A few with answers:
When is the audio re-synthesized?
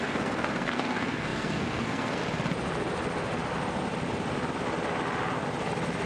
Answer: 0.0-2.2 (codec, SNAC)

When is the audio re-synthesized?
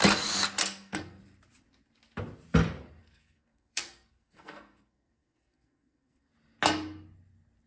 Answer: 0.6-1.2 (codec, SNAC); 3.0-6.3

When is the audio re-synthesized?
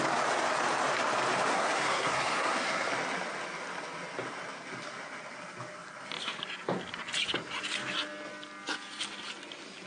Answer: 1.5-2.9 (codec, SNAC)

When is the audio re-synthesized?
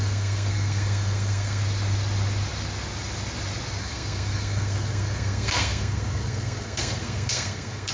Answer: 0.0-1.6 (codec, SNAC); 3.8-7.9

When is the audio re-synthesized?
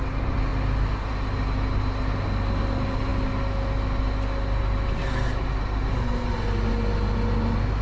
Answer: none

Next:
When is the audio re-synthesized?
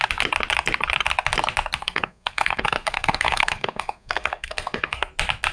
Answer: 1.8-5.1 (codec, SNAC)